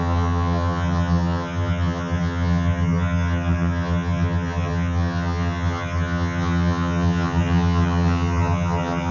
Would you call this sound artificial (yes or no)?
yes